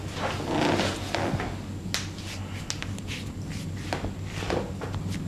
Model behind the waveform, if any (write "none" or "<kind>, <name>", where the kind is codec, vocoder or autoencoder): none